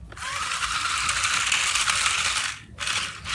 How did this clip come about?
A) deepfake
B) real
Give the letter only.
B